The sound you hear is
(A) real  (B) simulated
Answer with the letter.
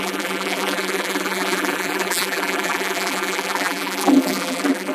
B